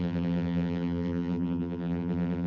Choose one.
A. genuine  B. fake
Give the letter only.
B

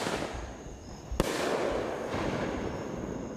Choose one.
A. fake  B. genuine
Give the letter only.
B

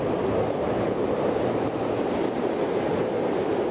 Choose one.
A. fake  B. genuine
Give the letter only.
B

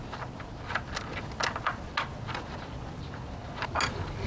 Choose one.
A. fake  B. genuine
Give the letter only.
B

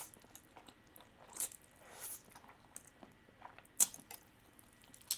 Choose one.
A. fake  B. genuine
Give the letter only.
B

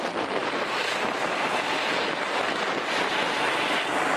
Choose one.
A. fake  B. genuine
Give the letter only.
B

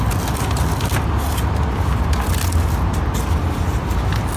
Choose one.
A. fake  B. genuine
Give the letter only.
B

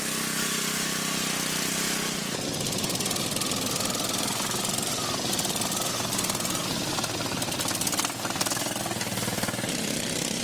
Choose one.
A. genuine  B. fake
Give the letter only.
A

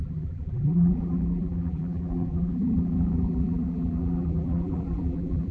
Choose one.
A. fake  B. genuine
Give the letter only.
A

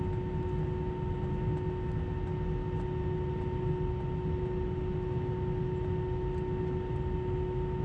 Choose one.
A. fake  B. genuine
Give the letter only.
B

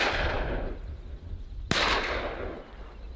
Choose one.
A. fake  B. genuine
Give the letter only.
B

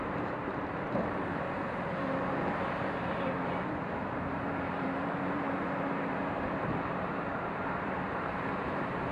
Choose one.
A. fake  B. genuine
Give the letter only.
A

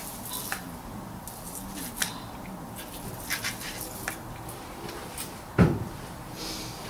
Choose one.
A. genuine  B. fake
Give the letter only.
B